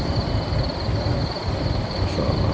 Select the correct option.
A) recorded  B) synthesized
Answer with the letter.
A